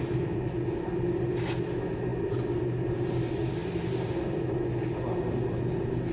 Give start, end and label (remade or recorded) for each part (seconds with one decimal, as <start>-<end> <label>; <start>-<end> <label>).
0.0-6.1 recorded